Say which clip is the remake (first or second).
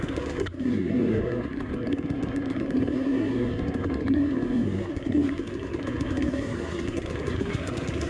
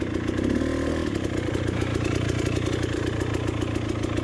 first